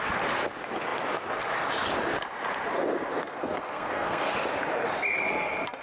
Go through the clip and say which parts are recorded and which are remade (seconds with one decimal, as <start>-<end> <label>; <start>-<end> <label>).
0.0-3.2 recorded; 3.2-4.3 remade; 4.3-5.8 recorded